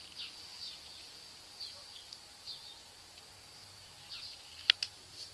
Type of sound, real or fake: real